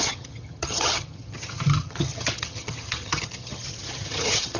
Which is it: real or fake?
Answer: fake